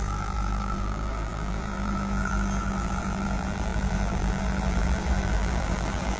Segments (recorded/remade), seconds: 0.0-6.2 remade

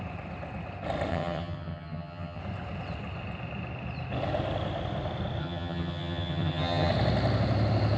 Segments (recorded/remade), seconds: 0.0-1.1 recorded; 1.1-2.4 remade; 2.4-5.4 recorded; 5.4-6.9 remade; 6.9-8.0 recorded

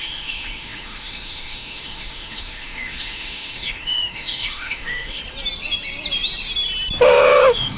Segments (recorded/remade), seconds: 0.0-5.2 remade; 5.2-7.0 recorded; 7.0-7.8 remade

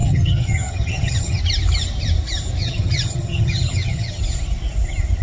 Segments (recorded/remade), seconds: 0.0-1.4 remade; 1.4-2.6 recorded; 2.6-4.2 remade; 4.2-5.2 recorded

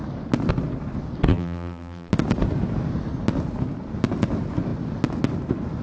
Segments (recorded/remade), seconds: 0.0-1.3 recorded; 1.3-2.1 remade; 2.1-5.8 recorded

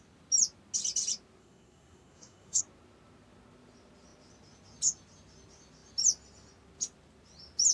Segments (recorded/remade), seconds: 0.0-1.4 recorded; 1.4-2.6 remade; 2.6-7.7 recorded